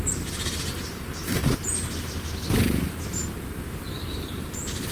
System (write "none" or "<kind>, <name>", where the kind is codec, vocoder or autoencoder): vocoder, BigVGAN v2